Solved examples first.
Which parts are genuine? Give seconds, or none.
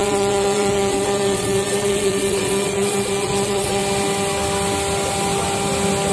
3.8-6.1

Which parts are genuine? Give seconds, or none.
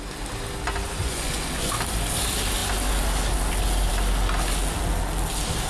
0.0-1.0; 1.7-5.7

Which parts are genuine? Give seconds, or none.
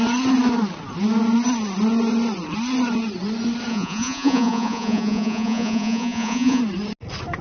0.0-3.7; 6.6-7.4